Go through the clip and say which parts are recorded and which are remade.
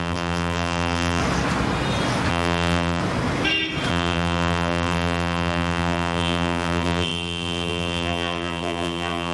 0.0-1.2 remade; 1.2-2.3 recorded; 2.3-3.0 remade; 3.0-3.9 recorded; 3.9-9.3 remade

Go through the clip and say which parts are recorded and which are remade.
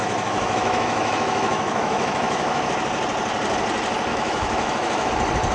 0.0-2.7 remade; 2.7-4.1 recorded; 4.1-5.1 remade; 5.1-5.5 recorded